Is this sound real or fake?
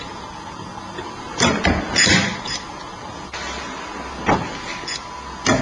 real